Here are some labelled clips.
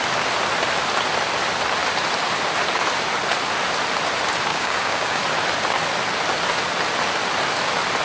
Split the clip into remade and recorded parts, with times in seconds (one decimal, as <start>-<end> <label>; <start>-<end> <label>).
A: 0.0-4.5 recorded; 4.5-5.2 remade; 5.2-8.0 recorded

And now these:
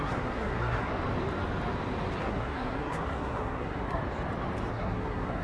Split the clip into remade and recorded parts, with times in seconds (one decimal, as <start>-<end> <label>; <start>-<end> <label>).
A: 0.0-0.9 remade; 0.9-2.2 recorded; 2.2-4.0 remade; 4.0-4.7 recorded; 4.7-5.4 remade

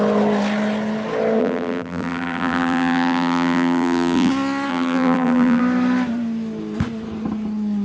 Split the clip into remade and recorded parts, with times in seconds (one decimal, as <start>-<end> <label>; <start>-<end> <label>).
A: 0.0-1.4 recorded; 1.4-4.3 remade; 4.3-4.7 recorded; 4.7-5.6 remade; 5.6-7.8 recorded

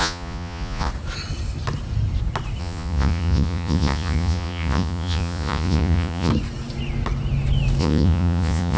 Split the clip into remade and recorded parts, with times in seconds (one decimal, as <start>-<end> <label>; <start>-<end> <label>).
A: 0.0-0.9 remade; 0.9-2.6 recorded; 2.6-6.3 remade; 6.3-7.8 recorded; 7.8-8.8 remade

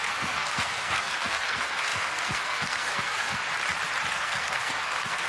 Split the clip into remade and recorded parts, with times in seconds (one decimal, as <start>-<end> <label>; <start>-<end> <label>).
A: 0.0-3.4 remade; 3.4-4.1 recorded; 4.1-5.3 remade